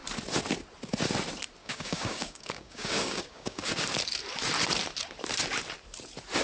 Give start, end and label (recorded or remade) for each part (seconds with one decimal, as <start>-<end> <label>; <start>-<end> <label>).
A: 0.0-1.6 recorded; 1.6-3.7 remade; 3.7-6.4 recorded